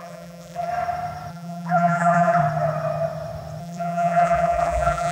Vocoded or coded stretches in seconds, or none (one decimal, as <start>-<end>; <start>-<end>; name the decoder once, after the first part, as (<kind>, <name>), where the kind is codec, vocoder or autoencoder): 0.0-0.7 (vocoder, BigVGAN v2); 1.3-2.4; 3.6-5.1